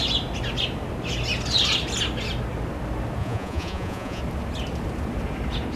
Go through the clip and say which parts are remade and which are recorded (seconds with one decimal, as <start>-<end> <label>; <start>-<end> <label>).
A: 0.0-3.2 recorded; 3.2-4.2 remade; 4.2-5.8 recorded